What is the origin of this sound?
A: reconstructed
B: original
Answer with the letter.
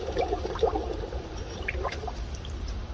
A